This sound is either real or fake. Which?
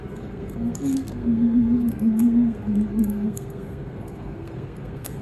fake